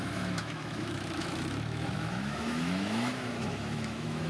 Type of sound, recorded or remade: remade